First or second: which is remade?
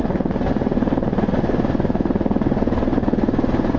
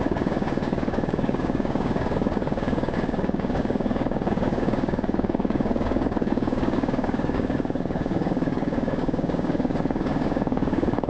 second